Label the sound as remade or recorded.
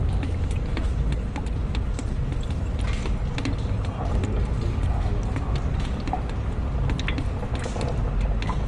recorded